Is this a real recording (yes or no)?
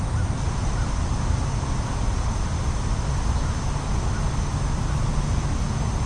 yes